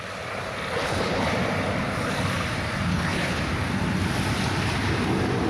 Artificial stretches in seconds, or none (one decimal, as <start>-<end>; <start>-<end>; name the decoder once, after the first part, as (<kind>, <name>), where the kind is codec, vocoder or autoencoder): 0.8-1.3 (codec, HILCodec); 2.9-3.4